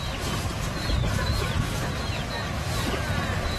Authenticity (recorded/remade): recorded